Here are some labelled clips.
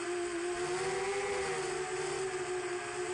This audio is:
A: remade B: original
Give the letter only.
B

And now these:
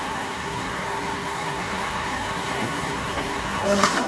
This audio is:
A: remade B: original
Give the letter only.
A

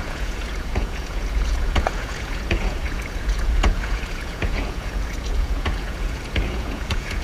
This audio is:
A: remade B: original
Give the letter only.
A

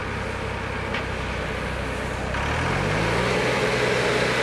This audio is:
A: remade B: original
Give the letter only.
B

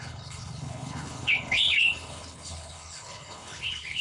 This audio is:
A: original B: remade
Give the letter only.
B